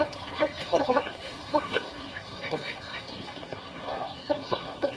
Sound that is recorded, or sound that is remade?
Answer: remade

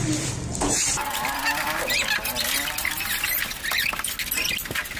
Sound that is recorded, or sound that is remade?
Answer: recorded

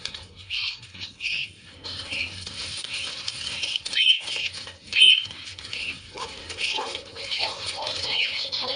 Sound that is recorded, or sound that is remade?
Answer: remade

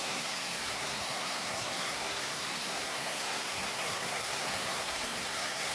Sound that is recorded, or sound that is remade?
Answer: remade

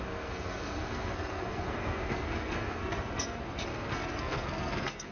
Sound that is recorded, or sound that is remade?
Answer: remade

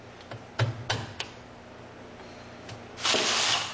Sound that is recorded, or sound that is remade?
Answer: recorded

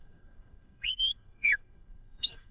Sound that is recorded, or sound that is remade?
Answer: remade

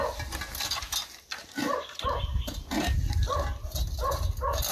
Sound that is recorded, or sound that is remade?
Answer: recorded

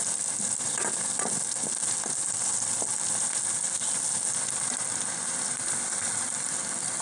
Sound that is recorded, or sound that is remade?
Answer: recorded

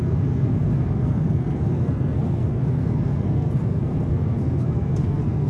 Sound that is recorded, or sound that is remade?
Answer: remade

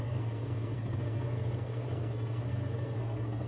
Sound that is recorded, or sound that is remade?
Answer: remade